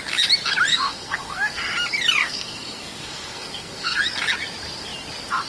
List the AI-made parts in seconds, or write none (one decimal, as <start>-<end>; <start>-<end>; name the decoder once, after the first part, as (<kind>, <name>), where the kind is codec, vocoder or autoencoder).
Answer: 0.7-1.6 (codec, SNAC); 2.2-4.0